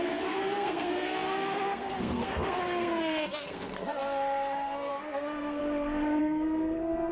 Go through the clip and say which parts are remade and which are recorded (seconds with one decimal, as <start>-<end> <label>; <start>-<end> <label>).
0.0-5.6 remade; 5.6-6.2 recorded; 6.2-7.1 remade